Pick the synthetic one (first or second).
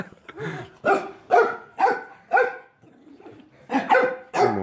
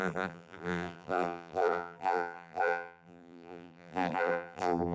second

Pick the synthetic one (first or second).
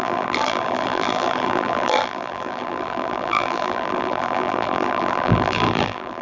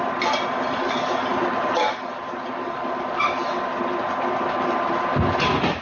first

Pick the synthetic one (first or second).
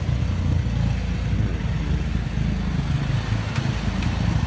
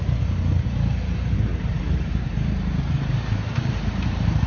second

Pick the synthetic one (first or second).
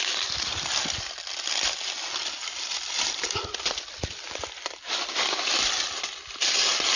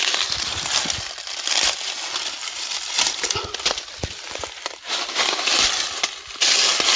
first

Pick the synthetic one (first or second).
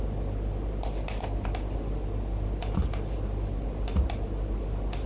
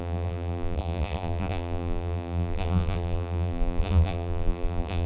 second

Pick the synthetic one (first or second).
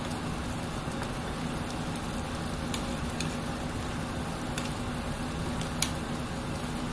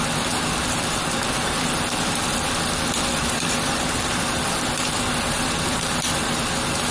second